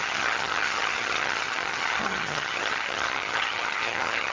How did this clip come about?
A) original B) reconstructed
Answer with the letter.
B